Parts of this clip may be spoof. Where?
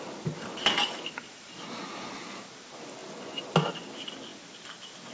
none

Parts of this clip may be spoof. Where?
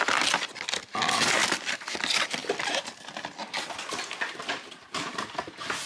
0.0-5.9 (vocoder, BigVGAN v2)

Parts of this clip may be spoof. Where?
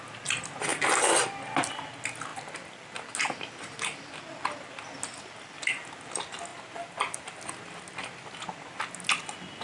6.5-7.4 (vocoder, BigVGAN v2)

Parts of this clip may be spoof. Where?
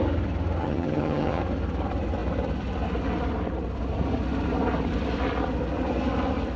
0.6-1.4 (vocoder, HiFi-GAN)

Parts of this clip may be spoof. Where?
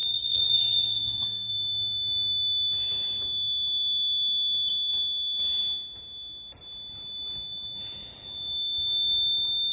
0.0-1.5 (codec, SNAC)